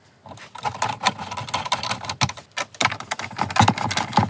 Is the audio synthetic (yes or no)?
no